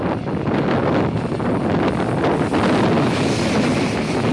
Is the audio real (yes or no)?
yes